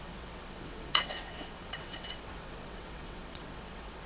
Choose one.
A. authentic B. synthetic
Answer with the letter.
B